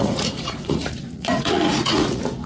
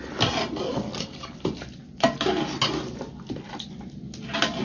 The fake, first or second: first